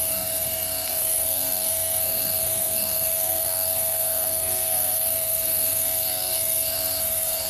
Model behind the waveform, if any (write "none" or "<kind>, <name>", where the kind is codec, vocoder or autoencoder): codec, SNAC